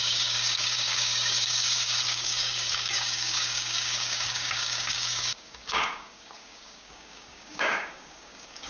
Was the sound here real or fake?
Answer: fake